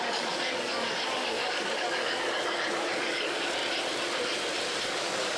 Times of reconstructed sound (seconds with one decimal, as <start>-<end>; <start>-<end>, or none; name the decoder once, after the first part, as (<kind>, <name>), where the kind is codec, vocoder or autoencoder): 0.0-3.6 (codec, DAC); 4.8-5.4